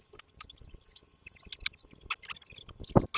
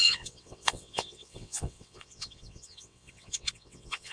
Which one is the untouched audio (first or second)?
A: first